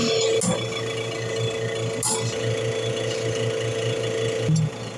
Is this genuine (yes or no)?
yes